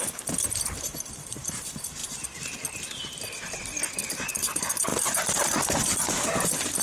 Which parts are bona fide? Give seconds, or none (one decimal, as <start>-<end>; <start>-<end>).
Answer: 2.0-4.1